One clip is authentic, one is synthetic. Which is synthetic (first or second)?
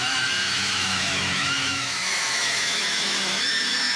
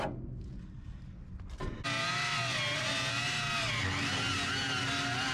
first